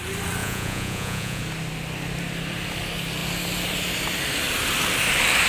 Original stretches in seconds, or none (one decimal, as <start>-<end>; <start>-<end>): 0.0-0.4; 1.4-5.5